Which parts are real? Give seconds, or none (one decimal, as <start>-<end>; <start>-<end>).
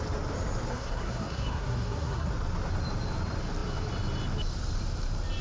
0.0-0.7; 2.3-5.4